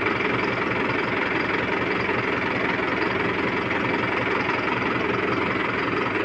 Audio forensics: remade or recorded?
recorded